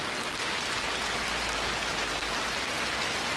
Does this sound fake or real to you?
real